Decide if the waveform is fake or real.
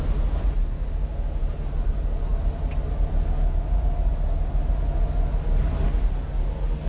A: real